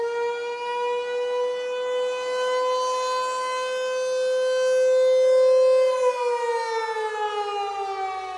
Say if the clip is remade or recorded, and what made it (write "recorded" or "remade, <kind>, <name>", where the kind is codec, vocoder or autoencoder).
recorded